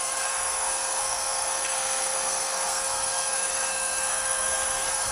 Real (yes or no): no